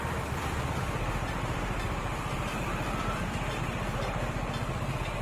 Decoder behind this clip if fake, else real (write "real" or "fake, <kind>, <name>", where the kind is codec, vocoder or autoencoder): fake, vocoder, BigVGAN v2